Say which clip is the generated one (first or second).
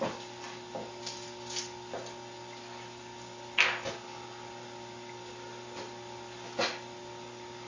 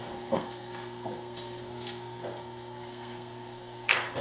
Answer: second